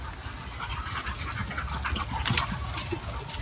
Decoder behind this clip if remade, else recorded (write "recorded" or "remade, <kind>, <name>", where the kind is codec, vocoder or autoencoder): recorded